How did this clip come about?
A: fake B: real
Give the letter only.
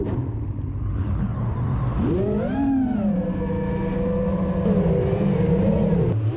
B